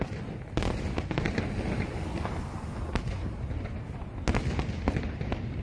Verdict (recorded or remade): recorded